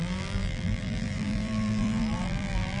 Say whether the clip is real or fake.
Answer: fake